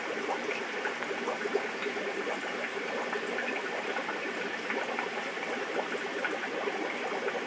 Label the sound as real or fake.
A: real